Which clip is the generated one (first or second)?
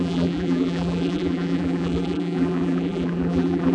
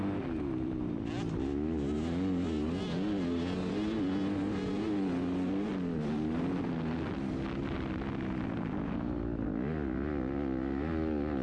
first